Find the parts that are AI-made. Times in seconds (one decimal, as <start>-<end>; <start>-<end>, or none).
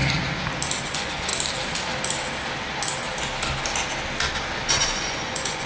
0.9-1.3; 4.7-5.7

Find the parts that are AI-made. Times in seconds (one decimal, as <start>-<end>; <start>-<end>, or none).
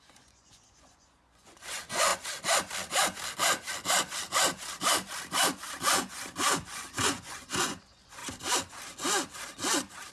0.0-2.1; 5.8-8.2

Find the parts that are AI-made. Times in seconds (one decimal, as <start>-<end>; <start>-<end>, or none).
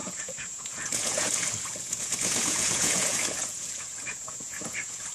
0.0-5.1